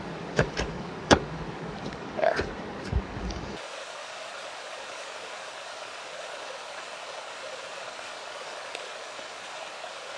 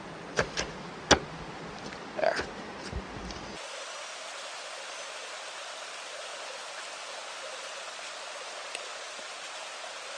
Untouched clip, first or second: second